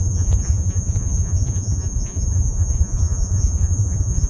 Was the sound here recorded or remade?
remade